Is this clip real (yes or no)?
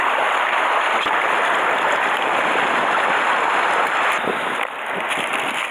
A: yes